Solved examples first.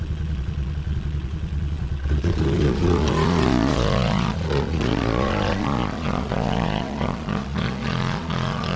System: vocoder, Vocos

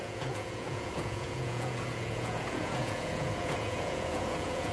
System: vocoder, Vocos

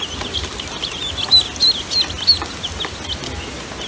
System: none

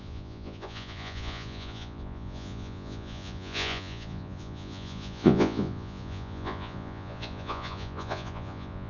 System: vocoder, Vocos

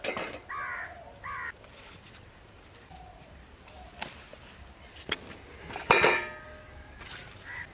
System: none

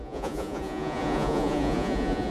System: vocoder, Vocos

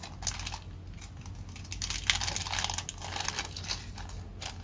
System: none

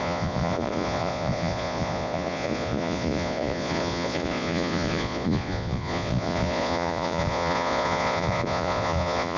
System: vocoder, Vocos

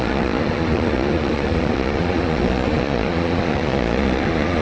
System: vocoder, Vocos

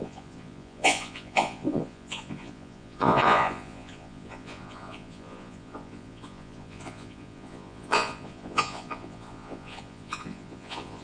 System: vocoder, Vocos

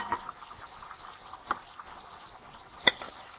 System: none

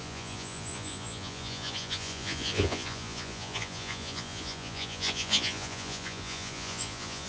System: vocoder, Vocos